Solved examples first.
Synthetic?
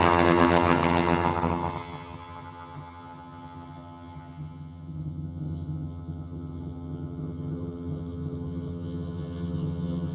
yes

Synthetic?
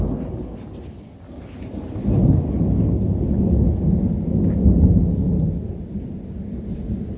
no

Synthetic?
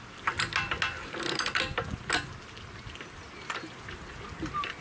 no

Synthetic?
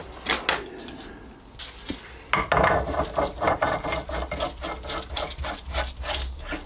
no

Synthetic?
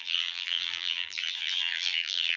yes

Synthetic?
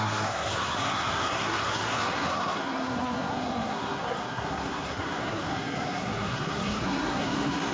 yes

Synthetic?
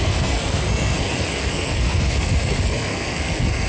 yes